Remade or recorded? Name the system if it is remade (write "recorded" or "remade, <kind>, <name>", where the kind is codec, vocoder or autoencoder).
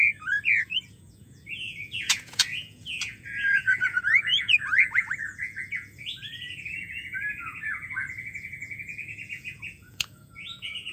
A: remade, vocoder, Vocos